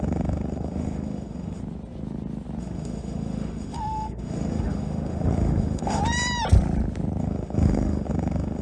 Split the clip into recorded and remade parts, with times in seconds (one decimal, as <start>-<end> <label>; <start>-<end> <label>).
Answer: 0.0-1.6 remade; 1.6-2.6 recorded; 2.6-6.0 remade; 6.0-7.2 recorded; 7.2-8.6 remade